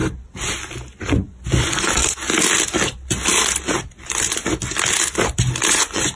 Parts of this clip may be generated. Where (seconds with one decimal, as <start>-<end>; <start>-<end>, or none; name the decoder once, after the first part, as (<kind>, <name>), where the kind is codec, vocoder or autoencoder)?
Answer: 1.1-2.0 (vocoder, Vocos); 5.7-6.2